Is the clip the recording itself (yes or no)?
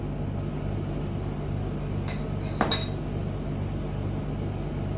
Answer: yes